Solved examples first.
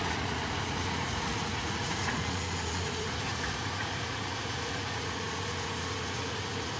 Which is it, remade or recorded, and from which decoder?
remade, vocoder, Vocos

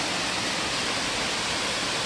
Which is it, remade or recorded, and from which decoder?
recorded